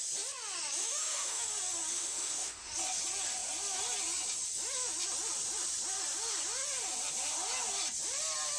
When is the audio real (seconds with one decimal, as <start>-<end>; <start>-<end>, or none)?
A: 0.0-0.8; 1.4-1.9; 2.7-8.6